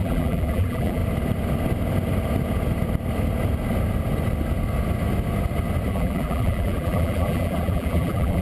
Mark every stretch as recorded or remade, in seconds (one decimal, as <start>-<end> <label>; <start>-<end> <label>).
0.0-1.0 remade; 1.0-5.9 recorded; 5.9-8.4 remade